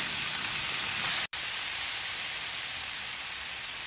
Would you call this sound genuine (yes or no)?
yes